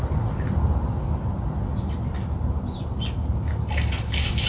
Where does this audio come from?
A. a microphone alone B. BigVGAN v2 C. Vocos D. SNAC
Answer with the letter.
A